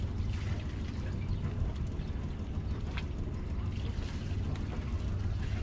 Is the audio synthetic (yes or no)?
no